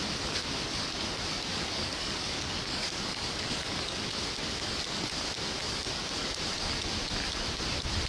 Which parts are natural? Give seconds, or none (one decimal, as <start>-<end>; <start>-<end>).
0.0-1.5; 4.1-8.1